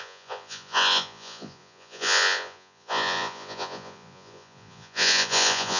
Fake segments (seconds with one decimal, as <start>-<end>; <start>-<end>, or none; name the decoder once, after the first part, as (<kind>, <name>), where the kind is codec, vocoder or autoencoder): 0.0-5.8 (vocoder, Vocos)